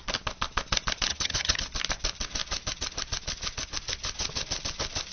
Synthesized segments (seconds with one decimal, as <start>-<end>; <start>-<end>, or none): 1.1-1.6